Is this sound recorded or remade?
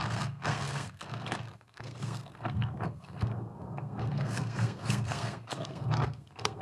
remade